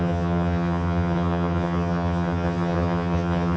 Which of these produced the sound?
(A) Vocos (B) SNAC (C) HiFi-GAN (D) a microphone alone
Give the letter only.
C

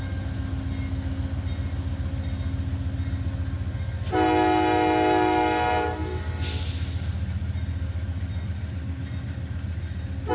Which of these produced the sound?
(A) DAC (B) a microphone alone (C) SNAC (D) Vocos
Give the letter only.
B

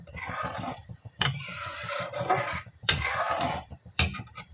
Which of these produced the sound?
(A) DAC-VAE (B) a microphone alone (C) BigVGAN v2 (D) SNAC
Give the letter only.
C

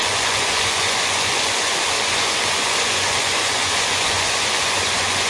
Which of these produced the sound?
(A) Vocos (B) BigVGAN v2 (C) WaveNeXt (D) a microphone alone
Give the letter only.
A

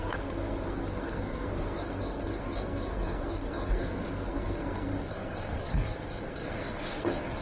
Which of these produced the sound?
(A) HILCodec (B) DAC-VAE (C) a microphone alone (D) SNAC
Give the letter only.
D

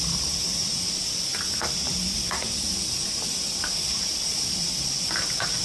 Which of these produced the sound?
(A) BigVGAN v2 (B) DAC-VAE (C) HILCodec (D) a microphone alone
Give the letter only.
A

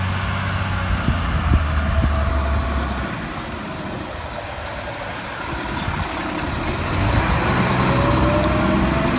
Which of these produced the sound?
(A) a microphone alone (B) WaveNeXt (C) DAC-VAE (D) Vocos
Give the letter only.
A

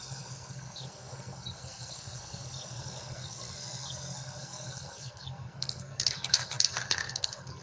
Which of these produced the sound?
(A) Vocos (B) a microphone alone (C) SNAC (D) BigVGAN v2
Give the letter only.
C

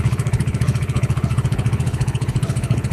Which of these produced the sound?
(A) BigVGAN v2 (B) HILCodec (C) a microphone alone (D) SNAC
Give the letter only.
B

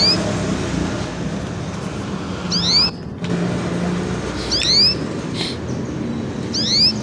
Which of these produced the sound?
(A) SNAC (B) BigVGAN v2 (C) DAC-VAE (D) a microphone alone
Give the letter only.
D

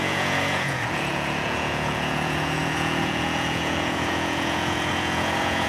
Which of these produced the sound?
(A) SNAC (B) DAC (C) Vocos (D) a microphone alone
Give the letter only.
C